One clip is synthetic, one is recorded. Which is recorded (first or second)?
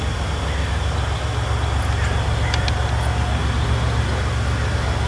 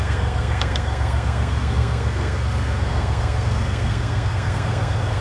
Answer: first